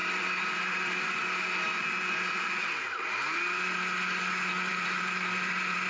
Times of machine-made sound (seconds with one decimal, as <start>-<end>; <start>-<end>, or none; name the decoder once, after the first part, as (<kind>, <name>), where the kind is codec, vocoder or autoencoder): 0.0-1.2 (vocoder, BigVGAN v2); 4.7-5.9